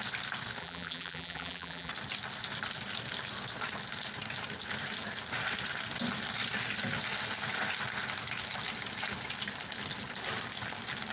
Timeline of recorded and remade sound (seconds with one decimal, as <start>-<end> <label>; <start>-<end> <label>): 0.0-0.6 recorded; 0.6-1.9 remade; 1.9-11.1 recorded